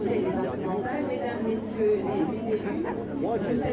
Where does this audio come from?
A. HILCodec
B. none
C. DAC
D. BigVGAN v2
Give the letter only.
B